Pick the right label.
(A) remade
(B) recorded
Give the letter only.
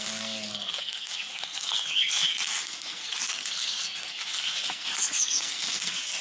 A